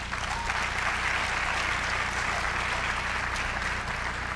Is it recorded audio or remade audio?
recorded